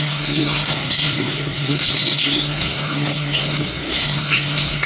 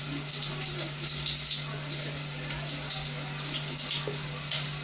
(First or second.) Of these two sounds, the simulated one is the first